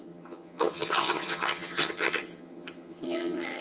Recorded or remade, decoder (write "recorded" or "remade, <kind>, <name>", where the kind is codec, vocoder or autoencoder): remade, vocoder, HiFi-GAN